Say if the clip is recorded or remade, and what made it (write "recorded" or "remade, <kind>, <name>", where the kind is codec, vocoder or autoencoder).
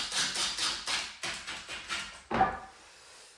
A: recorded